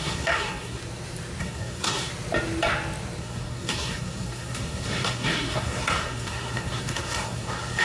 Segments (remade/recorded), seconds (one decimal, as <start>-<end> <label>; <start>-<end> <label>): 0.0-0.8 remade; 0.8-1.4 recorded; 1.4-2.1 remade; 2.1-3.2 recorded; 3.2-7.8 remade